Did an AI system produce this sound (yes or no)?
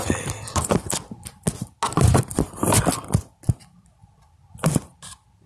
no